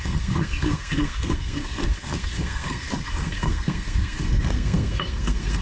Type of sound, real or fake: fake